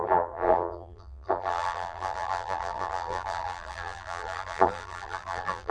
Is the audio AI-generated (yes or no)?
yes